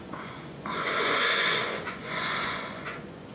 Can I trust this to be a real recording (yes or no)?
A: no